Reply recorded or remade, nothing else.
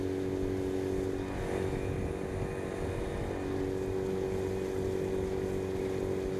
recorded